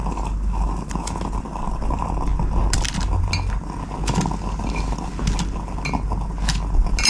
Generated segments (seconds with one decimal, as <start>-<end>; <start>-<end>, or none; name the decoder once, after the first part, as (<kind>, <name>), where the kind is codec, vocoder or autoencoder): none